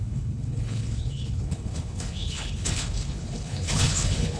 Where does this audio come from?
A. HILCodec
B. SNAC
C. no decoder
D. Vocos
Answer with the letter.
A